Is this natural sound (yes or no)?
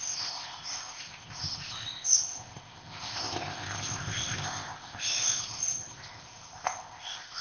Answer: no